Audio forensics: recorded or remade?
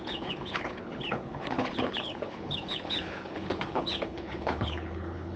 remade